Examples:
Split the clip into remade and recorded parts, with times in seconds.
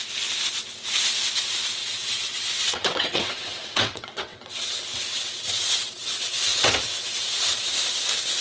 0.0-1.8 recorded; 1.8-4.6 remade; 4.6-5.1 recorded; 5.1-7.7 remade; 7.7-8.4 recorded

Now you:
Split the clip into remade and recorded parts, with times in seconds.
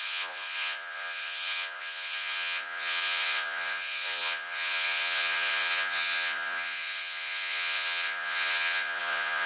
0.0-9.5 remade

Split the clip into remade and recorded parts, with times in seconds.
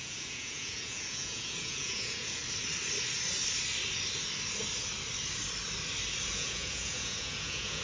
0.0-2.4 remade; 2.4-6.3 recorded; 6.3-7.8 remade